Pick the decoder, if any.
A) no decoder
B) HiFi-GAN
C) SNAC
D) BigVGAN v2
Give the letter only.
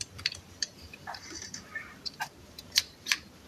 D